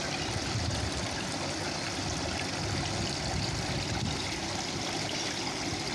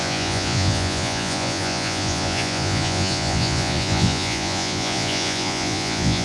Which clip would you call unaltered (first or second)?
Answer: first